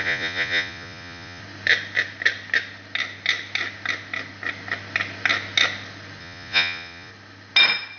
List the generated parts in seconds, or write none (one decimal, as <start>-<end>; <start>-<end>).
0.0-1.4; 6.2-7.1